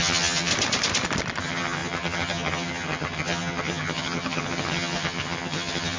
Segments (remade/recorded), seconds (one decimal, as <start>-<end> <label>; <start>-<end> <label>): 0.0-0.5 remade; 0.5-1.4 recorded; 1.4-6.0 remade